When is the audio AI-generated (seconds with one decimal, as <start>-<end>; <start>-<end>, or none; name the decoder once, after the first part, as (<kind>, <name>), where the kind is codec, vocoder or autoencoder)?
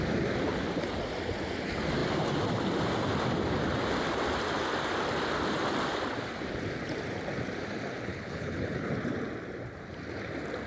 8.1-8.9 (codec, HILCodec)